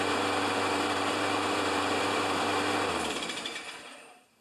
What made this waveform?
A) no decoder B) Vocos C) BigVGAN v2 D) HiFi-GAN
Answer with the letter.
C